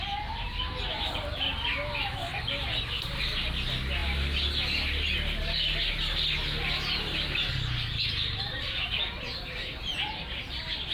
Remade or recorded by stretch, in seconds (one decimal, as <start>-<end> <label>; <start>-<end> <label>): 0.0-10.9 recorded